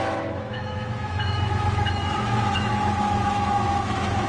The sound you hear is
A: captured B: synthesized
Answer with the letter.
B